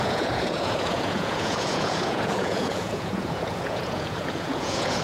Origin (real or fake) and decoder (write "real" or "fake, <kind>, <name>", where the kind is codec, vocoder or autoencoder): fake, vocoder, Vocos